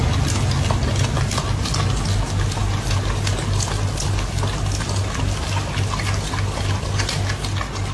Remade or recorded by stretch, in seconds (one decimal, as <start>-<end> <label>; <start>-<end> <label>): 0.0-7.9 recorded